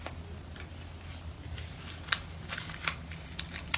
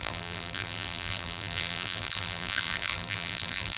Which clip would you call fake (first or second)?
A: second